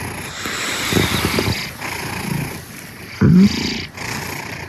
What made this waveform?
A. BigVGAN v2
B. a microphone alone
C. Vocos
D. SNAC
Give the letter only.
B